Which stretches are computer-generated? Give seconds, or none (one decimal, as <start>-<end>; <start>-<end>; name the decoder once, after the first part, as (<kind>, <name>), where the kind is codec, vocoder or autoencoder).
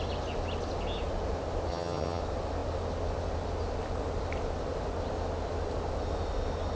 1.7-2.2 (vocoder, HiFi-GAN)